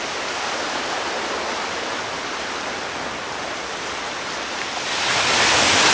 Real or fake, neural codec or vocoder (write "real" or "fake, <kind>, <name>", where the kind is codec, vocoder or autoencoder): real